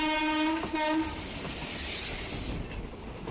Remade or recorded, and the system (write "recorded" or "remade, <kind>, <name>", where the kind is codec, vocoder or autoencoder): recorded